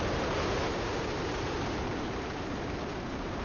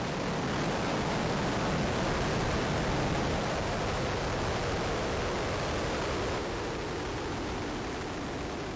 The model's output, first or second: first